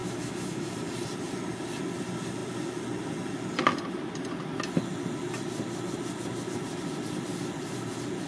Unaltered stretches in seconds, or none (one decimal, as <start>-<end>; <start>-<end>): 0.7-8.3